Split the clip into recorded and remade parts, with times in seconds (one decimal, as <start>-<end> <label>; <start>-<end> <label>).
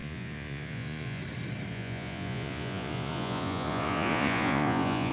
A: 0.0-1.2 remade; 1.2-1.7 recorded; 1.7-5.1 remade